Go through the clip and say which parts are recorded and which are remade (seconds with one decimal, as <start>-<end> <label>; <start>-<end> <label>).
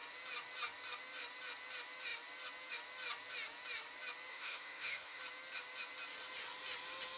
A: 0.0-4.3 recorded; 4.3-5.2 remade; 5.2-7.2 recorded